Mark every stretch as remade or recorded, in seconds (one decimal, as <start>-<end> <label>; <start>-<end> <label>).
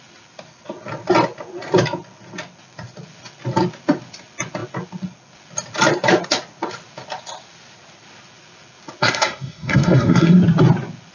0.0-9.0 recorded; 9.0-10.4 remade; 10.4-11.1 recorded